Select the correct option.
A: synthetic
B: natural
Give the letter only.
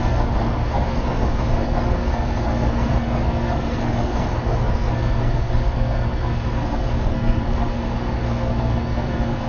A